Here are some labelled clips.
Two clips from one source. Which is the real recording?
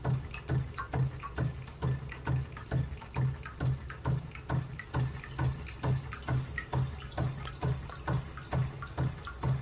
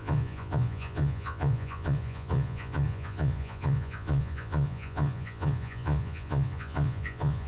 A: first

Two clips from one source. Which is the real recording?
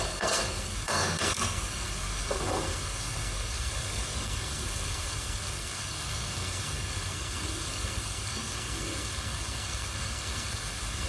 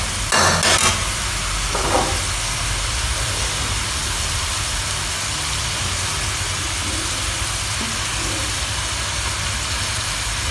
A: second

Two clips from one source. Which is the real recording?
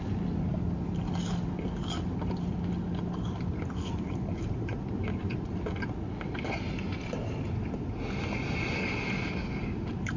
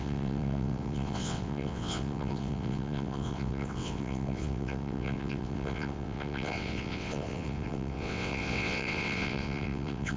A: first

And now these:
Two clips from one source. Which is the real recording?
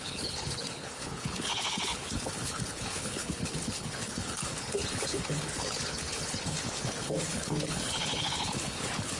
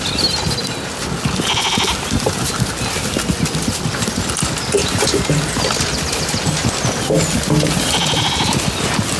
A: second